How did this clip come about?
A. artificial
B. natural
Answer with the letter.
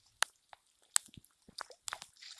B